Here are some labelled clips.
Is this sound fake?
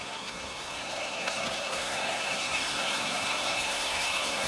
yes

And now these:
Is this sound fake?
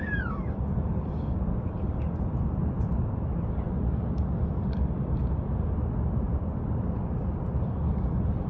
yes